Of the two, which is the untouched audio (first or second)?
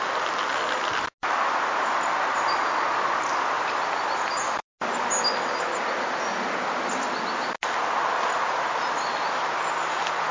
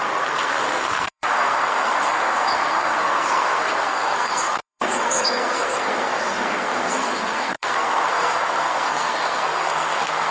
first